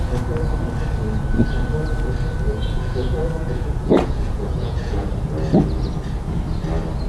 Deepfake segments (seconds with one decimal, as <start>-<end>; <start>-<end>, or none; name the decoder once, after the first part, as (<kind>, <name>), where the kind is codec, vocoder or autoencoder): 2.5-5.1 (vocoder, Vocos)